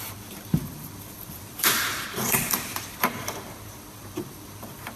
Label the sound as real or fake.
fake